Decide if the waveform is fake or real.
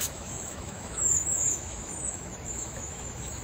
fake